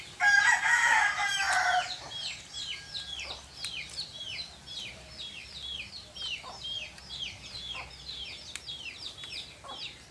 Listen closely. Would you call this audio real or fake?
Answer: real